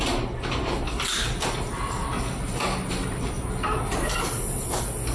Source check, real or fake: real